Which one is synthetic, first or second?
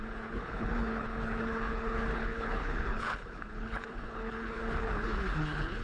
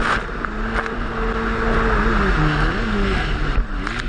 first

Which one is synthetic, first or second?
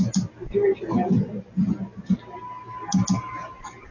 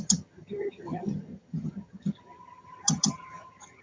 second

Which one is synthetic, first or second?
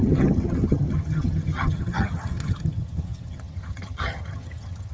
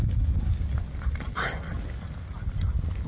first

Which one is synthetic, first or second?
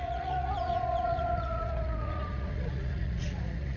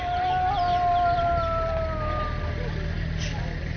first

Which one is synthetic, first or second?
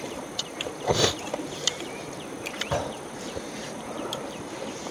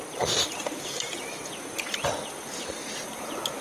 first